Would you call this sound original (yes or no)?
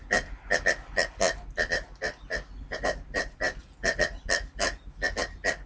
yes